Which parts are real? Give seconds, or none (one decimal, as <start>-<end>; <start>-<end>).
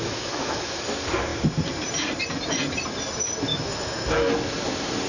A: 0.8-3.5; 4.3-5.1